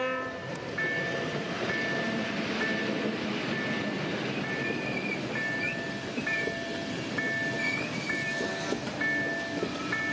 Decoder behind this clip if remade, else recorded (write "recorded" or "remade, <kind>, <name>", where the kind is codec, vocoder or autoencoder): recorded